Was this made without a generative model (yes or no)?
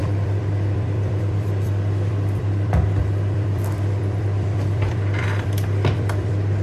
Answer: no